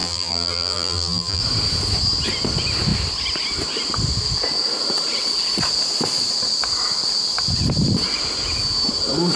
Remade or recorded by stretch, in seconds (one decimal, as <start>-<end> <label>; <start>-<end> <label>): 0.0-1.4 remade; 1.4-9.4 recorded